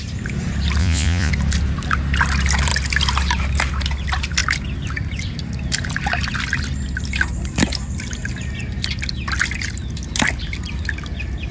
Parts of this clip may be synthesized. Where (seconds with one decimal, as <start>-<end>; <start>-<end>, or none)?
0.8-1.3